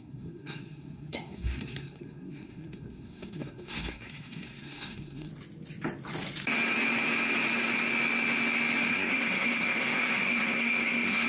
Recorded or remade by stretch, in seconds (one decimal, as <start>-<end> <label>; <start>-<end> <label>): 0.0-5.3 remade; 5.3-8.9 recorded; 8.9-11.3 remade